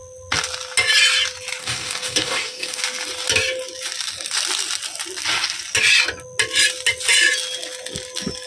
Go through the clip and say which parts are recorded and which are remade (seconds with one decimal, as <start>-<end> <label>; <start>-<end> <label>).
0.0-1.6 recorded; 1.6-2.8 remade; 2.8-8.5 recorded